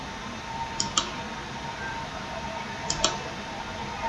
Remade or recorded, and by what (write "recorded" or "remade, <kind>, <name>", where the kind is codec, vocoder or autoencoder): remade, vocoder, BigVGAN v2